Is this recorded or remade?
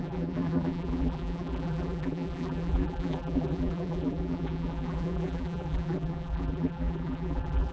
remade